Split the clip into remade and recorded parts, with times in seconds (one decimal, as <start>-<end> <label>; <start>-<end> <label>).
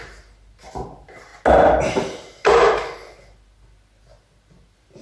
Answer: 0.0-5.0 recorded